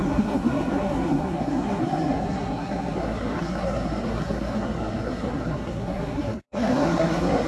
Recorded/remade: remade